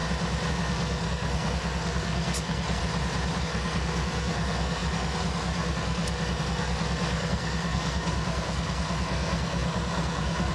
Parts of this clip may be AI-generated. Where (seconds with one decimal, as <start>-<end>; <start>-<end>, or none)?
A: 0.5-2.8; 3.4-10.5